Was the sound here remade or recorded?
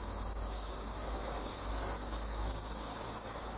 remade